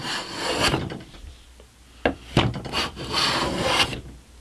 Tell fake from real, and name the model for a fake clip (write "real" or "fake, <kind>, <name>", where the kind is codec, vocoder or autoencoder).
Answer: real